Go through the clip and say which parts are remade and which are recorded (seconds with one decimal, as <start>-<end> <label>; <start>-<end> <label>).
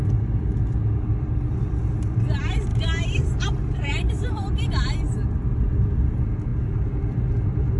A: 0.0-2.7 recorded; 2.7-4.7 remade; 4.7-7.8 recorded